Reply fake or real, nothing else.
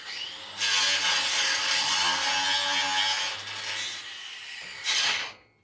real